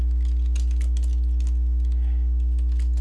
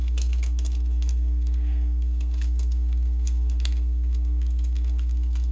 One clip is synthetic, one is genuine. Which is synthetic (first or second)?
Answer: second